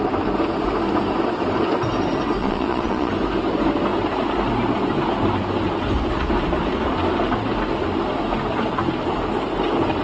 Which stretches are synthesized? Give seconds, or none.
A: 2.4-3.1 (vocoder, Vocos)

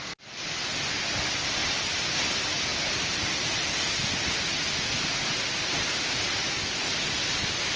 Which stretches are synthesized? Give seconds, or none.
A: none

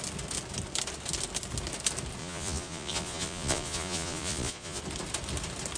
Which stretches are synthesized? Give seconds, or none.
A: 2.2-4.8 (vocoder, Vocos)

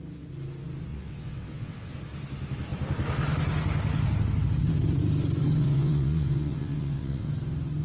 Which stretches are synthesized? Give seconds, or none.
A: 0.9-1.9 (vocoder, WaveNeXt); 5.6-7.3

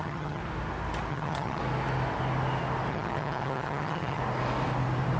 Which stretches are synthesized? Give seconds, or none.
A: 0.0-0.4 (vocoder, HiFi-GAN); 1.1-1.6; 2.9-4.2